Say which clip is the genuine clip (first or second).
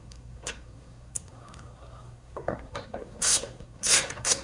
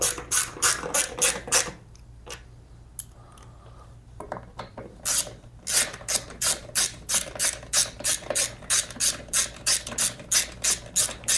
second